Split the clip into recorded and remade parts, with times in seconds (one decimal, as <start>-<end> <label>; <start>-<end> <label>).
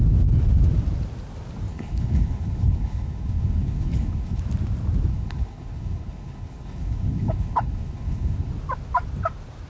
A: 0.0-1.7 recorded; 1.7-4.4 remade; 4.4-5.1 recorded; 5.1-8.5 remade; 8.5-9.7 recorded